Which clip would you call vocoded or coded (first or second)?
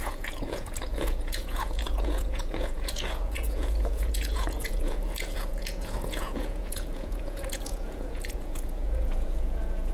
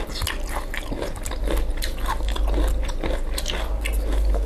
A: first